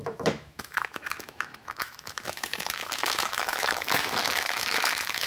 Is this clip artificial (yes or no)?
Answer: yes